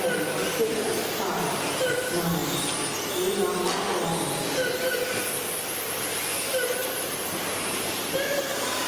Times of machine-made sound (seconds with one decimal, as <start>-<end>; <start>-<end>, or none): 6.8-7.3